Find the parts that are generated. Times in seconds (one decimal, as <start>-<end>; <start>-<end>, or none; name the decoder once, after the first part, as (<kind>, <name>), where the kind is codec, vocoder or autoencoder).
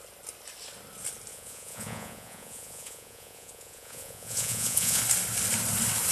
1.3-5.0 (vocoder, Vocos)